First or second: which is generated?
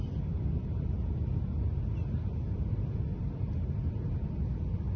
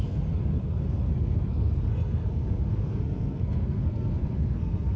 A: second